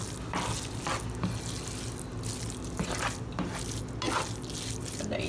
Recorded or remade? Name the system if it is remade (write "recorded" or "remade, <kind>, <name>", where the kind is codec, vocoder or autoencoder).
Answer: recorded